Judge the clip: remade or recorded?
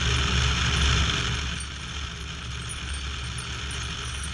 recorded